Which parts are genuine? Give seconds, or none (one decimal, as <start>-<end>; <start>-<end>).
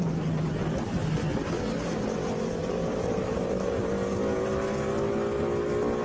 0.0-2.6; 3.9-6.0